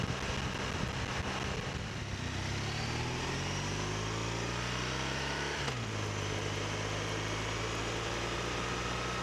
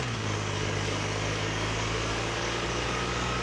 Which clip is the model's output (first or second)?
second